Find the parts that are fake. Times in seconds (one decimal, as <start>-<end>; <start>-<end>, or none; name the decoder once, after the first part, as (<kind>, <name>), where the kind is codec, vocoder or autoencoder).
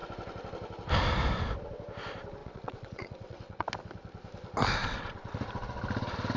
2.4-3.7 (vocoder, WaveNeXt); 4.8-5.4